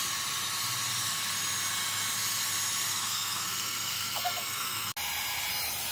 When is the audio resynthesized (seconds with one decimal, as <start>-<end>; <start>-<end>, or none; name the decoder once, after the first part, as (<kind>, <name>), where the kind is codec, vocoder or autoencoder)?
2.9-4.9 (codec, SNAC)